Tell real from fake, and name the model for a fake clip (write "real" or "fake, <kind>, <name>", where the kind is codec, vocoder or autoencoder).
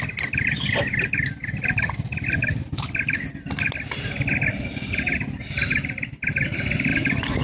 real